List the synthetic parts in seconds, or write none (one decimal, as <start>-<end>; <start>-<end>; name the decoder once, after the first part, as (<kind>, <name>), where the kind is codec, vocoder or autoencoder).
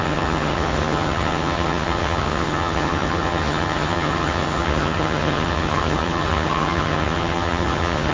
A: 0.0-8.1 (vocoder, HiFi-GAN)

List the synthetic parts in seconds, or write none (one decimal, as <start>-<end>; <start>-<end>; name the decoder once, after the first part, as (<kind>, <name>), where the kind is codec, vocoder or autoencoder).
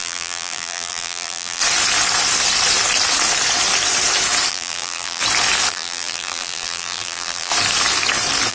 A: 0.0-1.6 (vocoder, BigVGAN v2); 4.5-5.2; 5.7-7.5